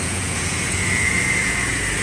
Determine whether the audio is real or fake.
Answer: fake